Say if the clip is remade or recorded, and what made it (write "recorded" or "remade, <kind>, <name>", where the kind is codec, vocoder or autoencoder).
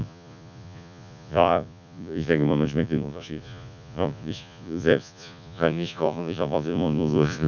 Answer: remade, vocoder, Vocos